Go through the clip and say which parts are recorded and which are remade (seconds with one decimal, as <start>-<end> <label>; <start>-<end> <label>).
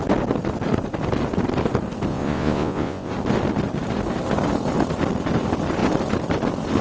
0.0-2.1 recorded; 2.1-3.1 remade; 3.1-6.8 recorded